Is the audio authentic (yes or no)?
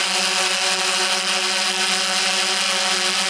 yes